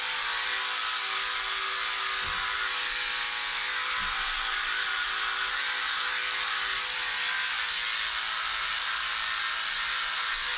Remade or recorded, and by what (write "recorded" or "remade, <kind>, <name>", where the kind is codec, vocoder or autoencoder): recorded